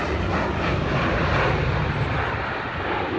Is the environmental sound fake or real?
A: real